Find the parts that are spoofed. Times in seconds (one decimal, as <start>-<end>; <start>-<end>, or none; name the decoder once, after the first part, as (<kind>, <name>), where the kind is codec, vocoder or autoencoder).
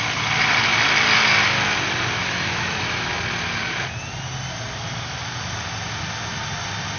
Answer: 2.2-3.1 (autoencoder, DAC-VAE)